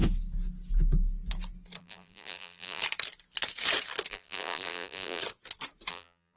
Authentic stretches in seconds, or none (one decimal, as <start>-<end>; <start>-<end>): 0.0-1.8; 2.8-4.1; 5.2-5.9